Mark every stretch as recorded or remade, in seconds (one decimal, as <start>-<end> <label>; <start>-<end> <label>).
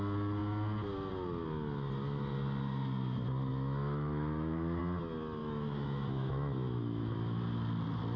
0.0-3.5 recorded; 3.5-4.8 remade; 4.8-5.4 recorded; 5.4-7.4 remade; 7.4-8.2 recorded